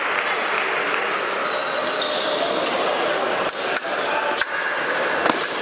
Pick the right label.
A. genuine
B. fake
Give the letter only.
A